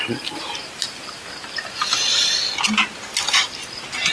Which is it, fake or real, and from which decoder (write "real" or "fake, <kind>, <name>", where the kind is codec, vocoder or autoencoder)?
real